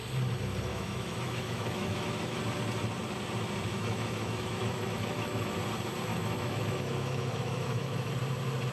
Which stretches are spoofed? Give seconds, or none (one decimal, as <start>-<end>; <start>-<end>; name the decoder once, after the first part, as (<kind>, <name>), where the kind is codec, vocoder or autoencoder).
0.7-2.4 (autoencoder, DAC-VAE); 3.7-5.5; 6.1-8.1